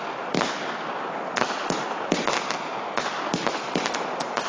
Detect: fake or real real